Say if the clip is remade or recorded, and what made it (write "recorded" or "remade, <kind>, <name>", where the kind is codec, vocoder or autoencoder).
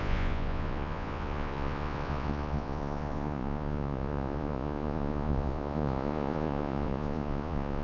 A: remade, vocoder, Vocos